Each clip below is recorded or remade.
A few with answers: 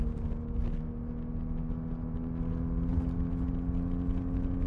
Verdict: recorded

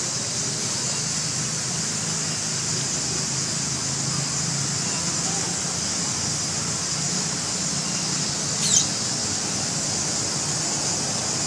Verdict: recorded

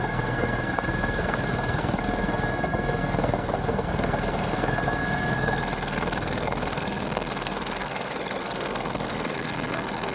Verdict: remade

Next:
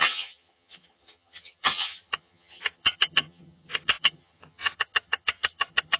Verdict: remade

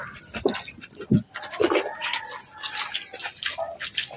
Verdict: recorded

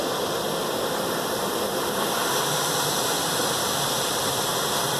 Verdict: recorded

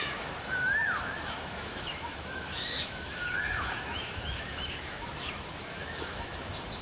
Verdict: remade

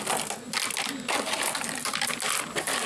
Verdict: recorded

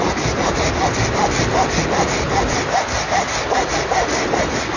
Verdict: recorded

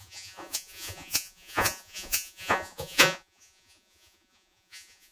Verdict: remade